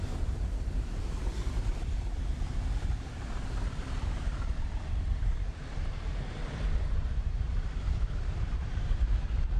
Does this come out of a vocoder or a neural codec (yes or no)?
yes